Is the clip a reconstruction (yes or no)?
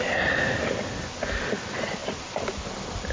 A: no